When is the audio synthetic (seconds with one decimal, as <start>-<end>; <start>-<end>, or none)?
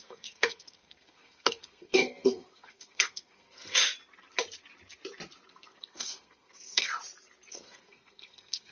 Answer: 0.0-3.8; 5.5-6.9; 7.5-8.7